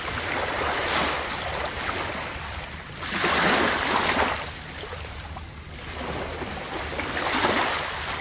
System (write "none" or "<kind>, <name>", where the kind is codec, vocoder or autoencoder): none